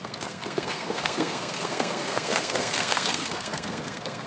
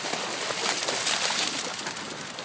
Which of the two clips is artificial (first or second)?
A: first